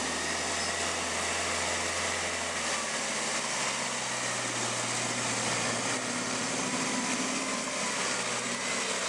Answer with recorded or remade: recorded